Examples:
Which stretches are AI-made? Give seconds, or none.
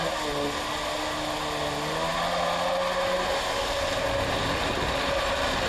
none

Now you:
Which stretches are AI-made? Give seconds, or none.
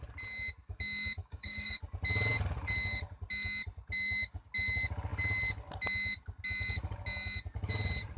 1.2-1.8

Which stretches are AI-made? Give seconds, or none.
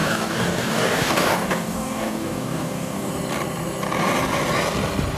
0.0-3.1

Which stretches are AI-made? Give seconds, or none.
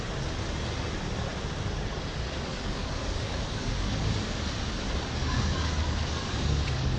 2.5-4.5; 5.2-7.0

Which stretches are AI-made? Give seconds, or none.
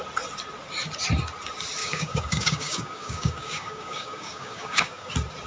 1.8-5.1